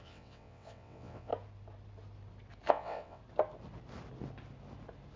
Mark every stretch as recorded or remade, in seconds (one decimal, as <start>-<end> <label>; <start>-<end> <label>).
0.0-1.3 remade; 1.3-2.7 recorded; 2.7-3.2 remade; 3.2-5.2 recorded